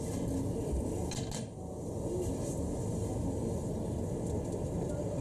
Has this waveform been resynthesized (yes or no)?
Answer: no